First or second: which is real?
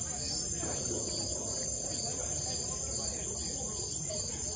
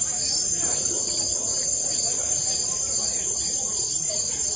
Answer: first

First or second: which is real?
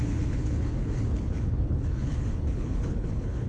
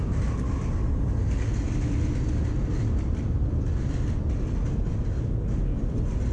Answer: second